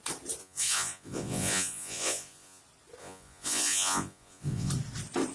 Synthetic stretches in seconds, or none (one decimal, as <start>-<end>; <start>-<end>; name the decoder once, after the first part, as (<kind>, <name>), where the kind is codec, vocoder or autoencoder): 0.4-2.6 (vocoder, Vocos); 3.0-4.7